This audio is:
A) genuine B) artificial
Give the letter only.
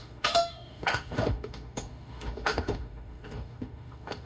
B